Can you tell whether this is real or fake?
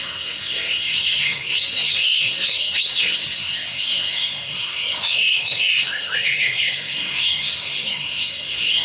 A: fake